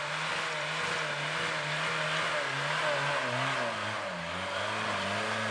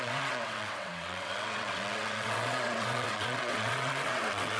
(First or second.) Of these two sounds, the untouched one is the first